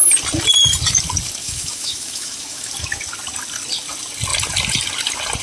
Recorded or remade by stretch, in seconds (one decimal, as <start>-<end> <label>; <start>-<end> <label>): 0.0-1.4 recorded; 1.4-2.7 remade; 2.7-5.4 recorded